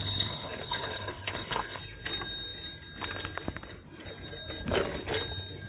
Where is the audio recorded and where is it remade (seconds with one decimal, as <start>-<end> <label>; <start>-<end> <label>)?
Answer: 0.0-1.8 remade; 1.8-5.7 recorded